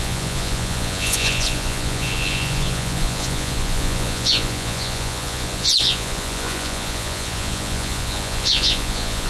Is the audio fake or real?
fake